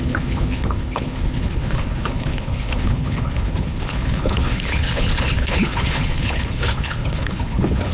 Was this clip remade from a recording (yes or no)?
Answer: yes